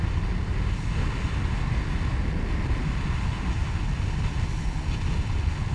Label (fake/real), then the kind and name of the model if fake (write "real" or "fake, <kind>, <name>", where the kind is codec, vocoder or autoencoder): real